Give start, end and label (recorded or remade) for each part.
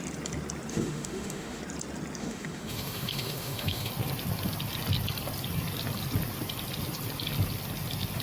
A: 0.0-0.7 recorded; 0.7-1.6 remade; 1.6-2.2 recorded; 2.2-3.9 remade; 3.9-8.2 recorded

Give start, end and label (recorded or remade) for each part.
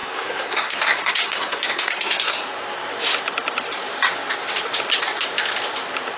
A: 0.0-2.4 remade; 2.4-6.2 recorded